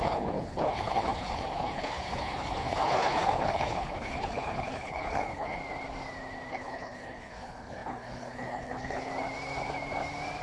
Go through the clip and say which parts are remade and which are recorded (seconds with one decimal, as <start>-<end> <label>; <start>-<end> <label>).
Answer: 0.0-5.6 remade; 5.6-6.5 recorded; 6.5-9.1 remade; 9.1-10.4 recorded